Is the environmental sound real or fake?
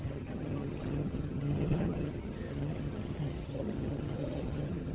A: fake